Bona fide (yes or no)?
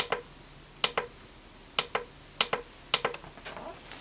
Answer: yes